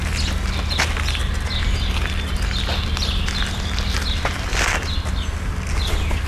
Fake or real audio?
real